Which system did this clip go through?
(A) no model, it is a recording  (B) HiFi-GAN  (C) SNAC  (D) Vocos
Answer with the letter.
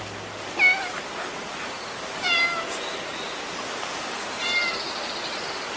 A